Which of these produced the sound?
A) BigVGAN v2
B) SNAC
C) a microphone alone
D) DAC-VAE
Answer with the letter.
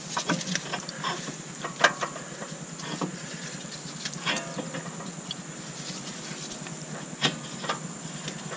C